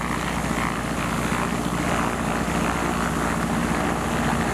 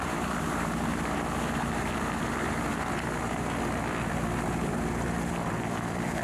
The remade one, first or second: second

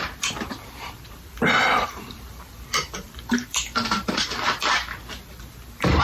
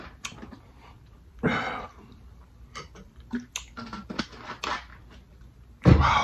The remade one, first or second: first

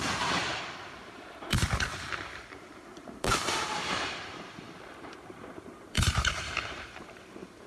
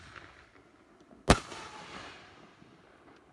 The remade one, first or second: first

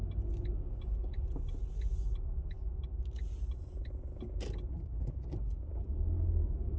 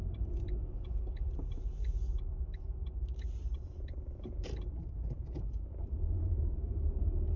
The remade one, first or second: second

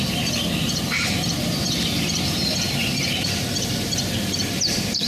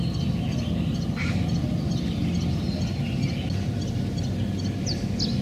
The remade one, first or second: first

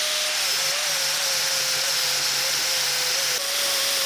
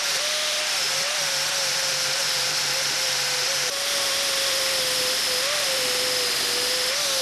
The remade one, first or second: second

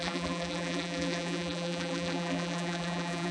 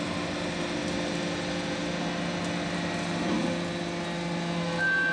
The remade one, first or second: first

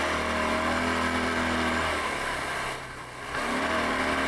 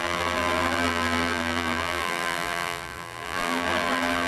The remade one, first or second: second